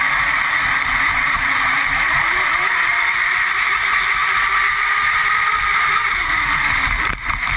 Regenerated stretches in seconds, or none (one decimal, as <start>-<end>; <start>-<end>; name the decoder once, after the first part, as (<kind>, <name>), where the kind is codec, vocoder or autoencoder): 0.0-7.6 (vocoder, BigVGAN v2)